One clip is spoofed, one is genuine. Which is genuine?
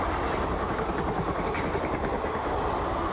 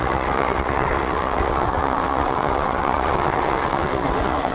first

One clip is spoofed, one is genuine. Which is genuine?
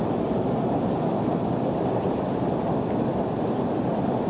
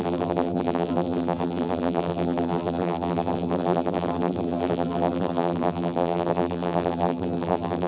first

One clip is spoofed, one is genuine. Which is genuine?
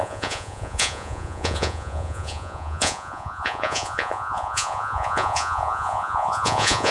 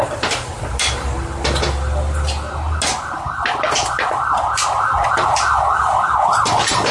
second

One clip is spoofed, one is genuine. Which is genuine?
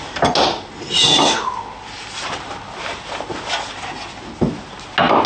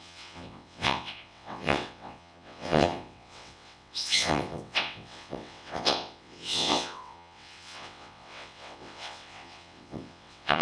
first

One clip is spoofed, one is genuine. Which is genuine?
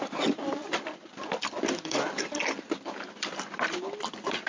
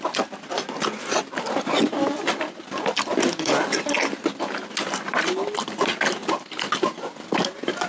second